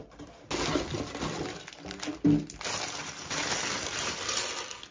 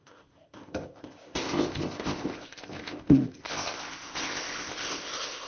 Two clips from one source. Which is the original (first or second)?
first